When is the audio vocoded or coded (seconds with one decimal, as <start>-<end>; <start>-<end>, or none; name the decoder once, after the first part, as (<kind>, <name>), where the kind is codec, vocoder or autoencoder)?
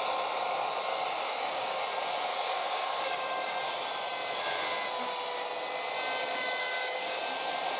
0.9-1.8 (codec, DAC); 2.3-3.6; 6.6-7.2